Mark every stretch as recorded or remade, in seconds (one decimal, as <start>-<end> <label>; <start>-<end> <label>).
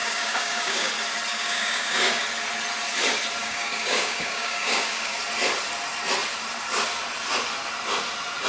0.0-0.9 remade; 0.9-1.3 recorded; 1.3-2.2 remade; 2.2-3.4 recorded; 3.4-5.2 remade; 5.2-8.5 recorded